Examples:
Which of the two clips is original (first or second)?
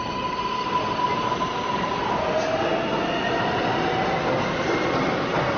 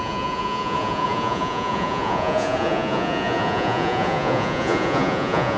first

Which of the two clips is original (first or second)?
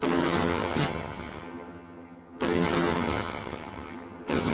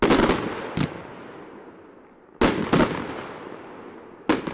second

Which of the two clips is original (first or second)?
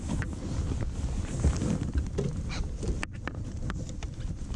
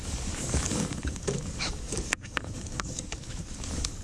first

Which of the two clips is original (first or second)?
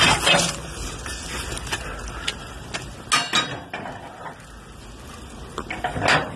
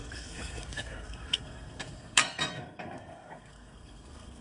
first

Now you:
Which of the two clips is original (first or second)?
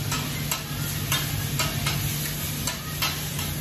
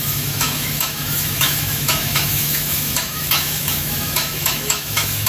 first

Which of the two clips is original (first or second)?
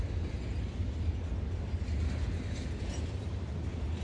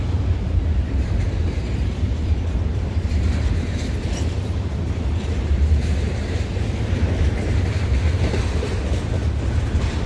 first